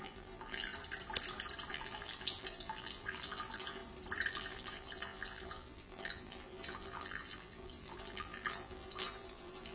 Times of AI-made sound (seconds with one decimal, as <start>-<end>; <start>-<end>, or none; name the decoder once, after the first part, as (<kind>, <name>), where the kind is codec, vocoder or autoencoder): 0.0-0.7 (vocoder, BigVGAN v2); 1.7-3.8; 4.3-9.7